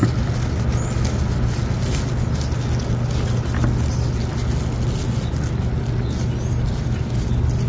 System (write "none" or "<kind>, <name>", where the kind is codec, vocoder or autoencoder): none